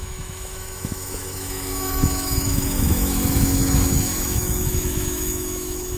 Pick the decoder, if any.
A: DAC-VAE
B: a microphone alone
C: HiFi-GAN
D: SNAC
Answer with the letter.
A